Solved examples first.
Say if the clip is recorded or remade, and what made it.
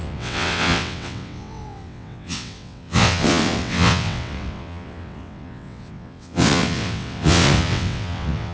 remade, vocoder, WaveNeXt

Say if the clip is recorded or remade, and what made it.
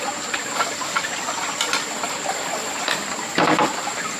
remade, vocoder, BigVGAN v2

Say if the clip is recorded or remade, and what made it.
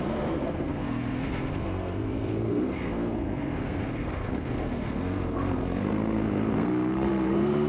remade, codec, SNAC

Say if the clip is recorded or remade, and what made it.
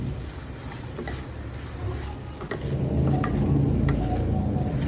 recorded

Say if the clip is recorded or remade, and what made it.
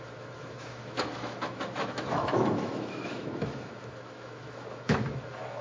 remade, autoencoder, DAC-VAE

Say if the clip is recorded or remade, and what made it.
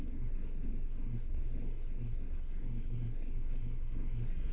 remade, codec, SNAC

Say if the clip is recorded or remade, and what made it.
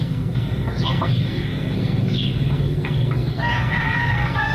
remade, codec, SNAC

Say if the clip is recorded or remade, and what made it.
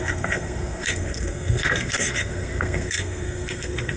remade, codec, SNAC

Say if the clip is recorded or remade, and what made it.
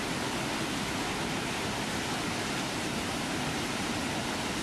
recorded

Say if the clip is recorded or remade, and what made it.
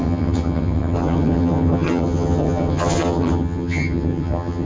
remade, vocoder, HiFi-GAN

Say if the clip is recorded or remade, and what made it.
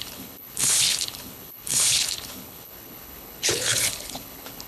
remade, codec, HILCodec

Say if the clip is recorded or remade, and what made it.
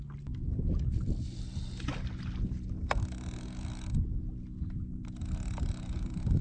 recorded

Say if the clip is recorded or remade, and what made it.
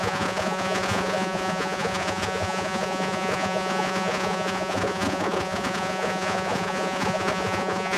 remade, vocoder, Vocos